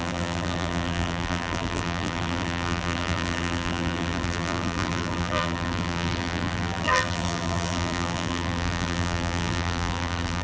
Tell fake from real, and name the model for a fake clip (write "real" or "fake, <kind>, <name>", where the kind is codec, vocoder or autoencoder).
fake, vocoder, BigVGAN v2